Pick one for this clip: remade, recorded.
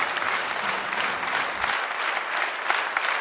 recorded